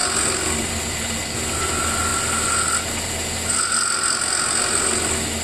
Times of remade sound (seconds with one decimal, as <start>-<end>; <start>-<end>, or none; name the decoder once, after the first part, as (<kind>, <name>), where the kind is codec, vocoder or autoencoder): none